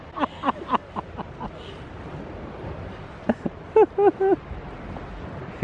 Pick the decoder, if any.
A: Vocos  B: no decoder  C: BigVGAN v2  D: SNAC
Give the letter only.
B